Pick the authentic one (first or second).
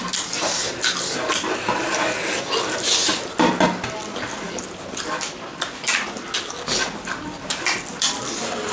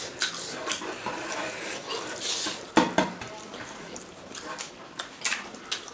first